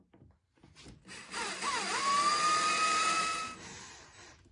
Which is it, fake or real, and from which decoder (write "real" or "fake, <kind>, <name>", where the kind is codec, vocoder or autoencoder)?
fake, vocoder, BigVGAN v2